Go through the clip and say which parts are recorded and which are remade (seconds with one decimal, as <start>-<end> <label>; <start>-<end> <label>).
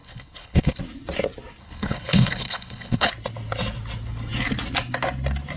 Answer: 0.0-0.8 remade; 0.8-1.6 recorded; 1.6-3.1 remade; 3.1-5.6 recorded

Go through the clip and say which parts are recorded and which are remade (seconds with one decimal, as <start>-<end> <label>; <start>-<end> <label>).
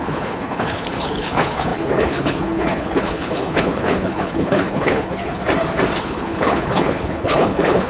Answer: 0.0-5.4 remade; 5.4-6.0 recorded; 6.0-7.9 remade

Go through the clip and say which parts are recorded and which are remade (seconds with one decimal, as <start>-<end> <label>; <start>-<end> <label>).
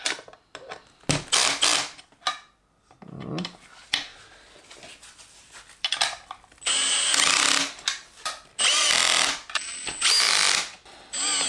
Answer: 0.0-11.5 recorded